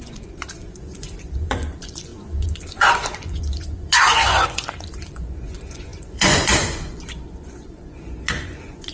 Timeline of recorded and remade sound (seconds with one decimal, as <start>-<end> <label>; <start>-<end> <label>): 0.0-8.9 remade